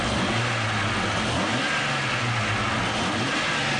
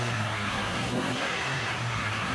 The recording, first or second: first